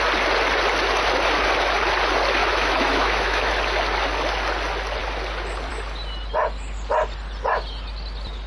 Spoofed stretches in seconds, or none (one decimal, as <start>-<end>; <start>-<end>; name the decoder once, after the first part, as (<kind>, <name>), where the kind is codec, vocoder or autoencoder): 2.4-3.5 (autoencoder, DAC-VAE)